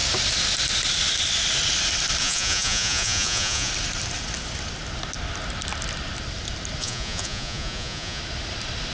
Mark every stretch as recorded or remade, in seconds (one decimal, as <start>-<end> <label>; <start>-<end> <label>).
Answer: 0.0-2.2 recorded; 2.2-3.7 remade; 3.7-6.8 recorded; 6.8-8.2 remade; 8.2-8.9 recorded